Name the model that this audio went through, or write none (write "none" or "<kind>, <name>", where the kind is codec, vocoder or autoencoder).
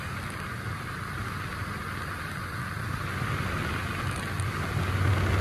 none